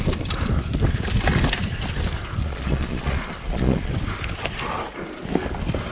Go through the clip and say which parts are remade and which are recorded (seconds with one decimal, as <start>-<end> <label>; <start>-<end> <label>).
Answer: 0.0-2.4 recorded; 2.4-3.9 remade; 3.9-5.9 recorded